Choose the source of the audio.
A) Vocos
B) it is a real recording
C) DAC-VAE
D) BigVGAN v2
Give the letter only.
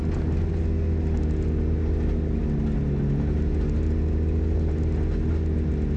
B